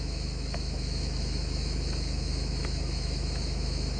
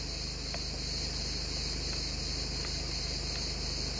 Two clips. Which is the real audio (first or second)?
second